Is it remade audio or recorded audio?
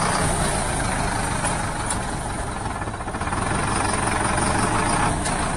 recorded